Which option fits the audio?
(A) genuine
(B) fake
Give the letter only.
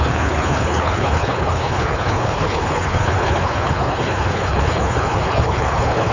B